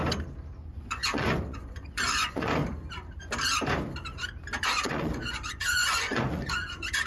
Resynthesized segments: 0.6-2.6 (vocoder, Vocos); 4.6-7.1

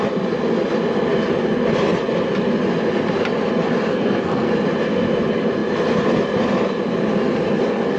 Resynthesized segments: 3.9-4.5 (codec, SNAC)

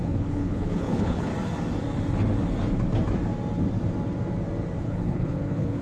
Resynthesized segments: 0.0-1.3 (codec, HILCodec); 4.8-5.8

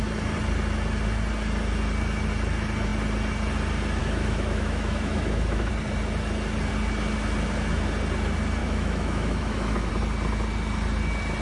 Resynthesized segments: 4.0-5.7 (autoencoder, DAC-VAE); 8.6-9.9

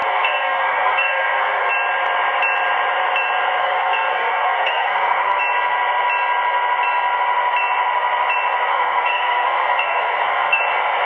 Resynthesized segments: 0.0-1.7 (codec, SNAC); 3.6-5.4; 8.7-10.6

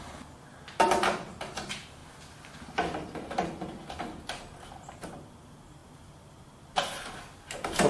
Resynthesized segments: none

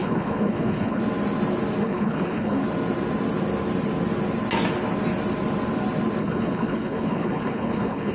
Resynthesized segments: 0.0-1.0 (codec, HILCodec); 1.8-2.6; 6.2-8.1

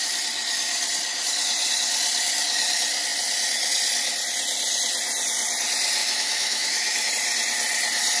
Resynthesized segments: 6.0-7.1 (autoencoder, DAC-VAE)